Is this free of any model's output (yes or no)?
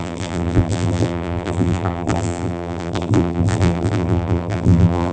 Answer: no